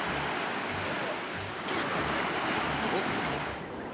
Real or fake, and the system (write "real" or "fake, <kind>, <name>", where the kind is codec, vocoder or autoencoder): real